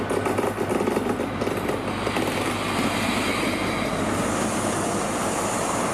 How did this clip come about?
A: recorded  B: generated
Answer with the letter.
A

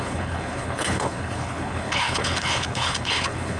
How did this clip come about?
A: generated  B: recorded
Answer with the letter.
A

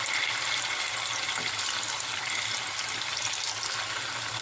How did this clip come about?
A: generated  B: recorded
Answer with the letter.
B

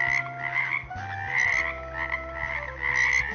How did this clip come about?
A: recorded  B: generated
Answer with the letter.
A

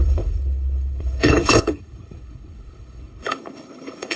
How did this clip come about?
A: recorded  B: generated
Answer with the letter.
B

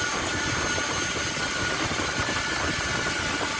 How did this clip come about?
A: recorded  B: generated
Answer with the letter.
A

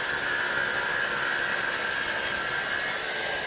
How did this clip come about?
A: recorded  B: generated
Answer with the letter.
A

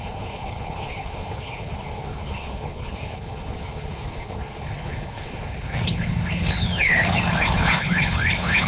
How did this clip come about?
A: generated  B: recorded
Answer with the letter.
A